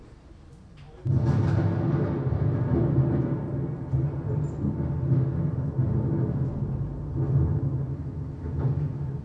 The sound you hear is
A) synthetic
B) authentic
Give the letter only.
B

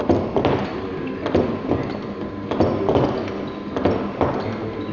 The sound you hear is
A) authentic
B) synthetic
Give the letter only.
A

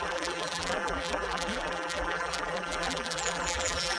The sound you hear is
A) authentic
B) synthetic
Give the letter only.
B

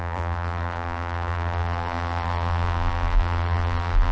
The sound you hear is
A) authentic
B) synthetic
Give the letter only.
B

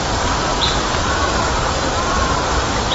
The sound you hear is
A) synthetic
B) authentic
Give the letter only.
A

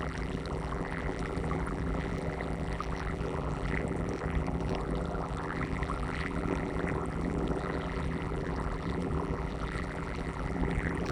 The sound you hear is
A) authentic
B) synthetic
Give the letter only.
B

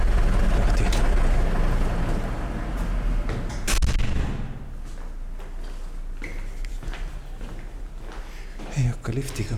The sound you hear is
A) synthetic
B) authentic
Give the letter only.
B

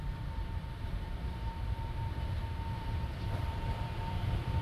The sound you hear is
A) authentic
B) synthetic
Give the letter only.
B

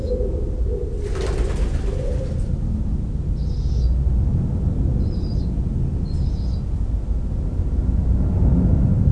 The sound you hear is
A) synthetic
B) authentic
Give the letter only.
B